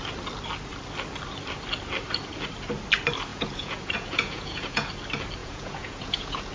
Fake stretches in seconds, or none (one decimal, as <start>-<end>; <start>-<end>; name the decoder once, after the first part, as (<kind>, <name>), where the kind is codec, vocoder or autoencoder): 3.3-4.9 (vocoder, Vocos); 5.4-6.5